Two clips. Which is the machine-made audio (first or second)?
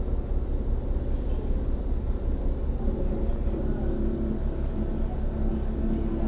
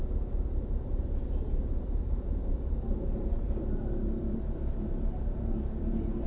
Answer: second